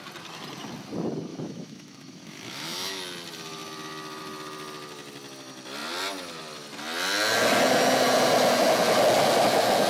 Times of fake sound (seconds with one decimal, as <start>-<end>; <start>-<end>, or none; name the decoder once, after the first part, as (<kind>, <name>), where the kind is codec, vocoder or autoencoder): 1.3-3.0 (autoencoder, DAC-VAE)